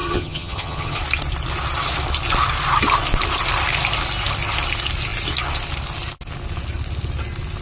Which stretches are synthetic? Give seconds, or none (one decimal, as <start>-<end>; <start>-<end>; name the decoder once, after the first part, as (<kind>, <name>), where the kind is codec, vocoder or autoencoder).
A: 0.0-1.0 (vocoder, HiFi-GAN)